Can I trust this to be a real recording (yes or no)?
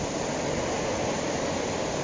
yes